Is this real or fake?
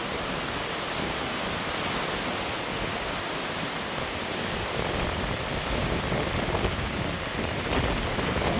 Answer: real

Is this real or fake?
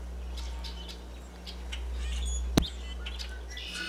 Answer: real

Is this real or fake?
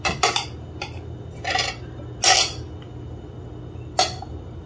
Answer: real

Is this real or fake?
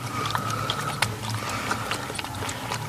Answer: real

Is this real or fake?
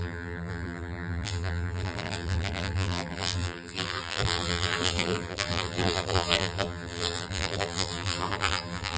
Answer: fake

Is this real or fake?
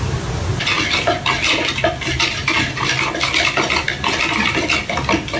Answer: real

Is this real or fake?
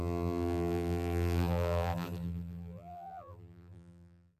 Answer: fake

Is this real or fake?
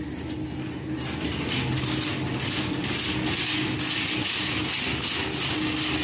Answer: real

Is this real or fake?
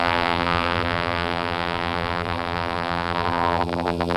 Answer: fake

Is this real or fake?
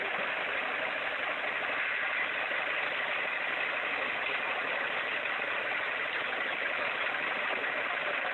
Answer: real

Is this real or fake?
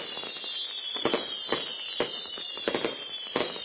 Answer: fake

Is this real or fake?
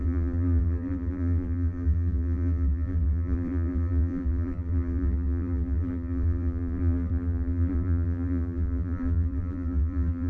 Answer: fake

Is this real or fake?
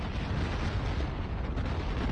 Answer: real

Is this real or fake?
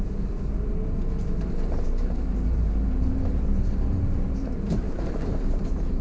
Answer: fake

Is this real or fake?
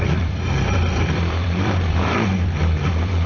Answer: fake